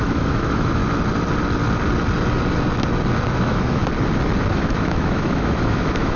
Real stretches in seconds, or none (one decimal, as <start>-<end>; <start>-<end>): 0.8-3.3; 3.8-4.5